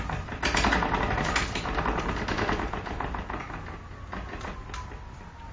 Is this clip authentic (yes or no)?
yes